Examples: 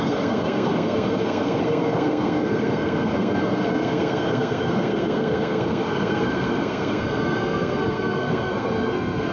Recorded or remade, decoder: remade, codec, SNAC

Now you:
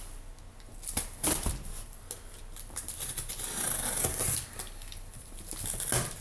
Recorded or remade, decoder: recorded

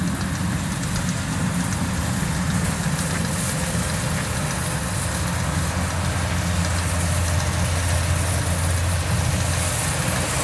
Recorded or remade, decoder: recorded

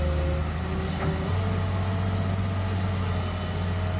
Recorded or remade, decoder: recorded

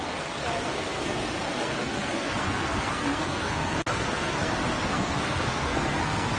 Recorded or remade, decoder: remade, codec, SNAC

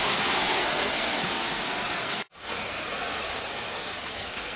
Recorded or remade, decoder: remade, codec, SNAC